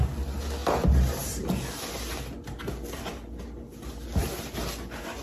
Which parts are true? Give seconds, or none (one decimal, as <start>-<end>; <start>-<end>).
0.0-0.6; 1.4-5.2